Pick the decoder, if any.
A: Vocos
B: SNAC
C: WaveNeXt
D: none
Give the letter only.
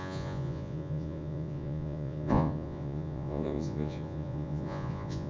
A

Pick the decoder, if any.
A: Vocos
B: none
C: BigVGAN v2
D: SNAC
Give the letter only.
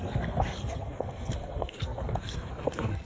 D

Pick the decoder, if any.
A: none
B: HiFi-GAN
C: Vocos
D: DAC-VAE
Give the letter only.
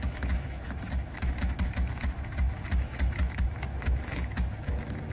D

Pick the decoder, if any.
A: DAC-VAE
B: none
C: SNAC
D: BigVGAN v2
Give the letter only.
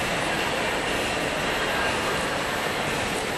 B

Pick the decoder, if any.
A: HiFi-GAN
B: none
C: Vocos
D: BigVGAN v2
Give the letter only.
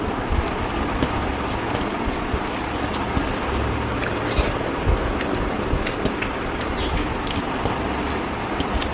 B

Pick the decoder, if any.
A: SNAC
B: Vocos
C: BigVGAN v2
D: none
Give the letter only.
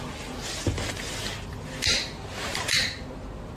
D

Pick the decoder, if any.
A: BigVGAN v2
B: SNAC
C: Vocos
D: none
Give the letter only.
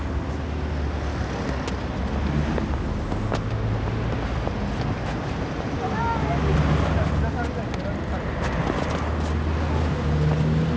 D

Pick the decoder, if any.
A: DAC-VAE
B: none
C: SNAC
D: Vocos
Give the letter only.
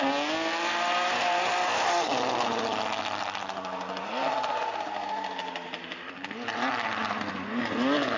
B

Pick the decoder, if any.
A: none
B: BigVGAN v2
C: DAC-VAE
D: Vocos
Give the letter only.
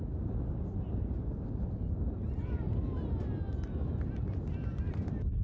A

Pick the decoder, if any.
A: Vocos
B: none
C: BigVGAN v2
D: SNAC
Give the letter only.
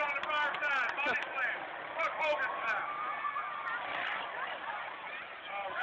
B